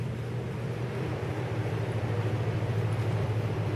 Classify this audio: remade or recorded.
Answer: remade